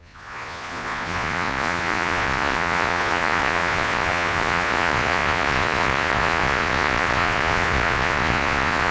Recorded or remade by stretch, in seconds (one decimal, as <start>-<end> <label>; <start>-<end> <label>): 0.0-8.9 remade